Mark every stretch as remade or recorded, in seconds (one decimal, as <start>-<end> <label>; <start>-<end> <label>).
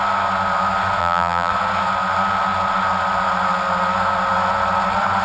0.0-1.0 recorded; 1.0-1.5 remade; 1.5-5.2 recorded